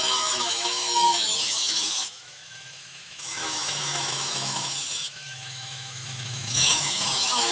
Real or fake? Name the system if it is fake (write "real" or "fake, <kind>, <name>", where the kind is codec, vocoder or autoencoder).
fake, autoencoder, DAC-VAE